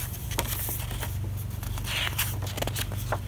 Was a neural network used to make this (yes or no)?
no